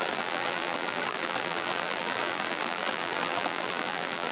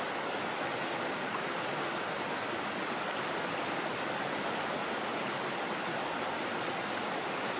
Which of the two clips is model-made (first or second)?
first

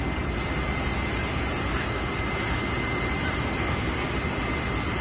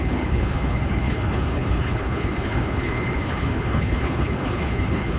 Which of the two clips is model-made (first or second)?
second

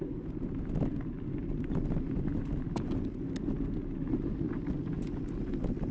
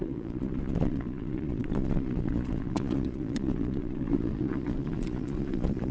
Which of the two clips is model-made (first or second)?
second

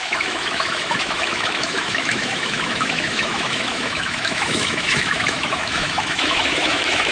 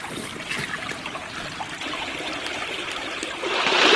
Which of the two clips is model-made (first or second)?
first